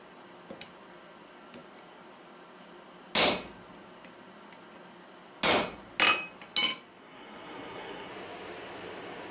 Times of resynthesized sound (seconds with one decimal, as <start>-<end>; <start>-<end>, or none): 7.0-8.1